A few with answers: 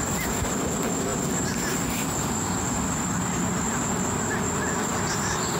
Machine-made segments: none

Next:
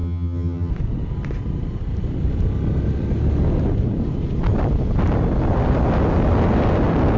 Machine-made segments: 0.0-0.7 (vocoder, HiFi-GAN)